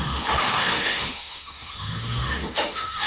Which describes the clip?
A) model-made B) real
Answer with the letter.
A